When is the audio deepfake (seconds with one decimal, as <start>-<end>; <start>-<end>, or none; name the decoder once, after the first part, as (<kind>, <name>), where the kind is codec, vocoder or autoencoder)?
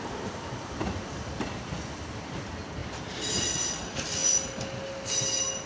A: none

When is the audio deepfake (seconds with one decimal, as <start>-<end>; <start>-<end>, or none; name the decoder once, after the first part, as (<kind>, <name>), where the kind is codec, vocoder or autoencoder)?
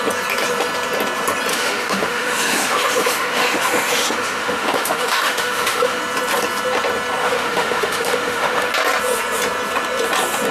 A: 1.5-6.0 (autoencoder, DAC-VAE); 7.2-8.7